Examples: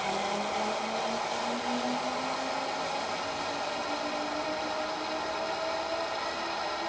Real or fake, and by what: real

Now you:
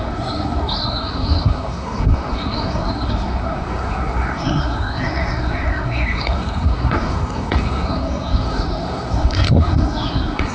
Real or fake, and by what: fake, codec, SNAC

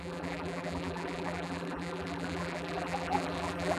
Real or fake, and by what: fake, vocoder, BigVGAN v2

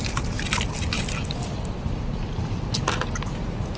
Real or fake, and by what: real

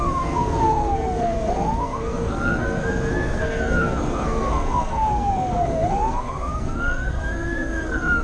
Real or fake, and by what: fake, codec, SNAC